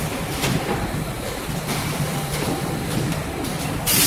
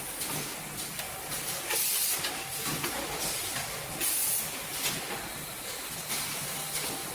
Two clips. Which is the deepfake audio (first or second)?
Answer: first